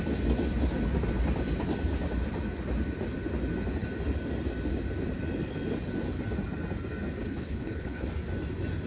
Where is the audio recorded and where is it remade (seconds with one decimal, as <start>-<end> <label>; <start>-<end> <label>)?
0.0-7.2 recorded; 7.2-8.1 remade; 8.1-8.9 recorded